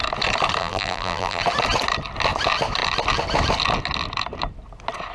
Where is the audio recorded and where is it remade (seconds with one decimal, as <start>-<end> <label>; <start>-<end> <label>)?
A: 0.0-0.6 recorded; 0.6-1.4 remade; 1.4-5.1 recorded